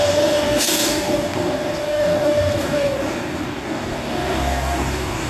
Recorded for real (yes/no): no